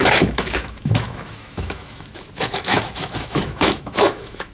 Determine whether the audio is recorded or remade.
remade